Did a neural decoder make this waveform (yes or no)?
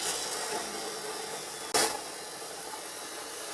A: no